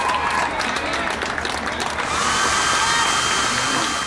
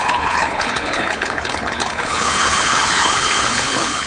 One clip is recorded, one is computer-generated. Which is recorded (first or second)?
first